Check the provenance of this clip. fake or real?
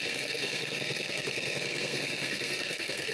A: fake